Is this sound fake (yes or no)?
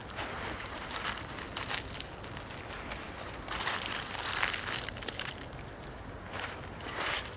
no